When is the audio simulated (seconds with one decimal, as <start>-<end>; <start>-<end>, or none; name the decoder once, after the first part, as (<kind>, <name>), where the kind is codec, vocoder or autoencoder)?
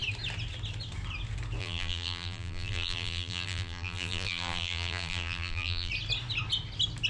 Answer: 1.6-5.9 (vocoder, BigVGAN v2)